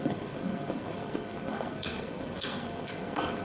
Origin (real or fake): fake